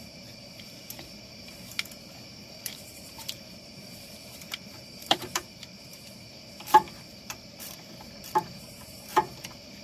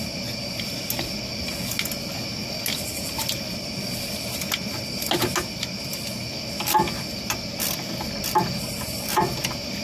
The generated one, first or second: first